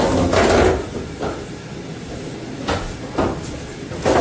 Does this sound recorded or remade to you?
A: recorded